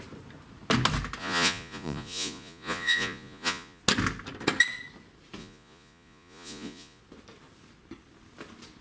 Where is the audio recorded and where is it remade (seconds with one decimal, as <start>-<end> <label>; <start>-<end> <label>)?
0.0-1.2 recorded; 1.2-3.8 remade; 3.8-5.4 recorded; 5.4-7.0 remade; 7.0-8.8 recorded

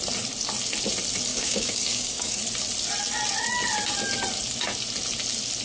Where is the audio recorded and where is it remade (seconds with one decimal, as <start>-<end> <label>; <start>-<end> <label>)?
0.0-1.3 recorded; 1.3-2.4 remade; 2.4-5.6 recorded

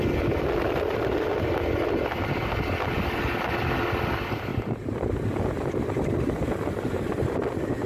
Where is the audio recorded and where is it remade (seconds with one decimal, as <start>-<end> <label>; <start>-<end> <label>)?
0.0-7.9 recorded

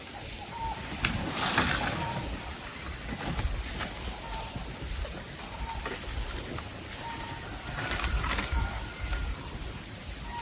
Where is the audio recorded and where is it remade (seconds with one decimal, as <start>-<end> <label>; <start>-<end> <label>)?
0.0-10.4 recorded

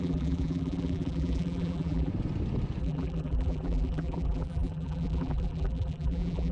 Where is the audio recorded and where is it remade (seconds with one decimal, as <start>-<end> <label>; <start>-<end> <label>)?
0.0-2.1 remade; 2.1-2.8 recorded; 2.8-6.5 remade